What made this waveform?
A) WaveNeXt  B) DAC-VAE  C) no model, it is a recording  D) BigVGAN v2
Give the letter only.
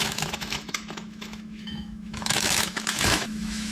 B